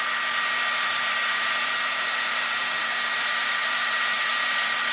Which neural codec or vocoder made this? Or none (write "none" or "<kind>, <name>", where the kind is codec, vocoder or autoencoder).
vocoder, BigVGAN v2